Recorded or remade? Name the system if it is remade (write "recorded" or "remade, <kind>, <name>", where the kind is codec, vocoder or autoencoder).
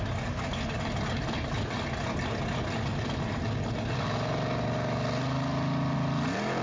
recorded